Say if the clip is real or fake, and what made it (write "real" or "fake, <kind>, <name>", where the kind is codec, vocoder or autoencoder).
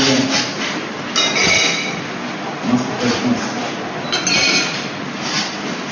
real